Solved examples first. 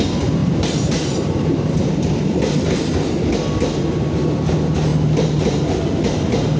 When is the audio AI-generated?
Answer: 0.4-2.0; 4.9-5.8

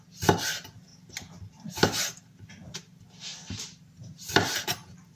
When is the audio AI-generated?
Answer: 0.0-5.2

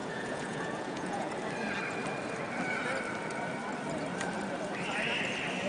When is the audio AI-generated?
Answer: 0.0-1.3

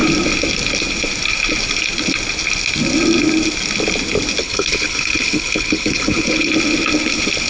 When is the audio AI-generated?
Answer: 4.4-6.5

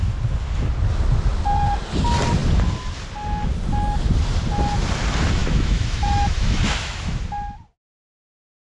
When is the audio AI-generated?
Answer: 5.4-7.2

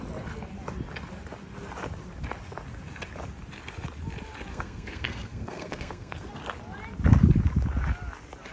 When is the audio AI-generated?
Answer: 4.5-6.3

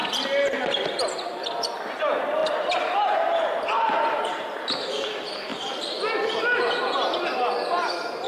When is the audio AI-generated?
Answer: 2.4-4.3; 5.5-6.4

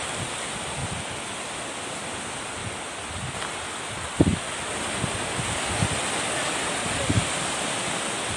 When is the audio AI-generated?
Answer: none